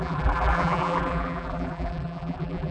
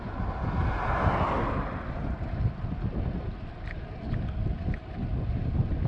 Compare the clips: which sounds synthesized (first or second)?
first